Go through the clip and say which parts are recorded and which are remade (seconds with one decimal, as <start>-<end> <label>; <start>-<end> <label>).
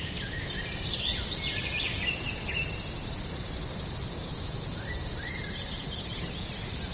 0.0-0.7 recorded; 0.7-1.7 remade; 1.7-2.6 recorded; 2.6-6.1 remade; 6.1-6.9 recorded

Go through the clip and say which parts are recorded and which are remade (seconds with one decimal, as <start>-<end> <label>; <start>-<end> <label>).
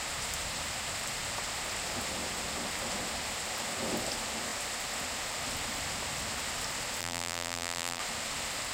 0.0-7.0 recorded; 7.0-8.0 remade; 8.0-8.7 recorded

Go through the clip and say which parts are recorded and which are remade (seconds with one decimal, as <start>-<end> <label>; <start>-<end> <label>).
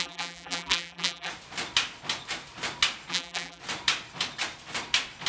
0.0-1.3 remade; 1.3-3.1 recorded; 3.1-3.6 remade; 3.6-5.3 recorded